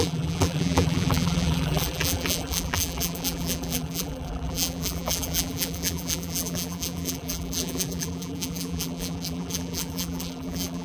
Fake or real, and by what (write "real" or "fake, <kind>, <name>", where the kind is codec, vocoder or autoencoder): fake, vocoder, BigVGAN v2